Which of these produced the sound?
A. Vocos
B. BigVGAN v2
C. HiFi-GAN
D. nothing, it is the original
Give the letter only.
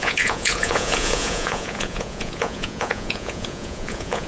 A